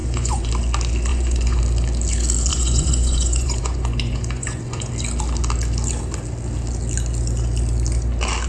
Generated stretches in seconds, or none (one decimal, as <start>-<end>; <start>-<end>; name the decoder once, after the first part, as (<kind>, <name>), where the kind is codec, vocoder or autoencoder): 0.0-0.5 (vocoder, Vocos); 1.1-1.6; 2.5-4.9